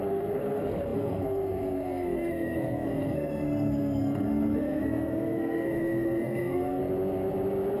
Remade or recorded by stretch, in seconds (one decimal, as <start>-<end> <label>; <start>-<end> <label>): 0.0-6.8 remade; 6.8-7.8 recorded